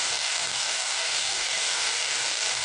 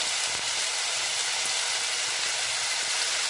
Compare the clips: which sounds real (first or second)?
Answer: second